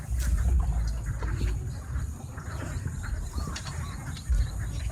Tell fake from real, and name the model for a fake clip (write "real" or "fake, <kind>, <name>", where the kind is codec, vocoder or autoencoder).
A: real